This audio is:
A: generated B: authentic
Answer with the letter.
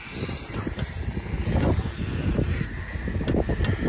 B